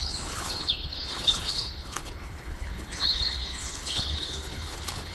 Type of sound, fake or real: fake